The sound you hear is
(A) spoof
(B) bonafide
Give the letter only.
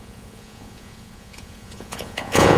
A